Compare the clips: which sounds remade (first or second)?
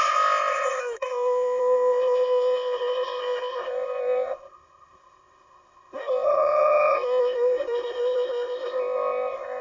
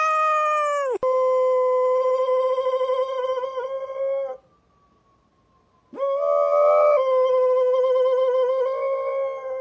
first